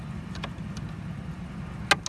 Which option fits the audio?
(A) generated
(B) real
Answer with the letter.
B